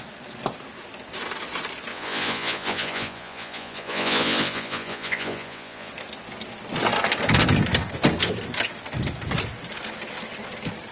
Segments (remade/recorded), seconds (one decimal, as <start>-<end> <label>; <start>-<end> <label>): 0.0-1.9 recorded; 1.9-5.9 remade; 5.9-10.9 recorded